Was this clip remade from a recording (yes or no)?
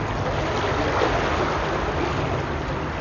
no